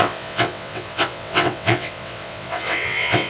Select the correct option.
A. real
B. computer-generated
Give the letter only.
B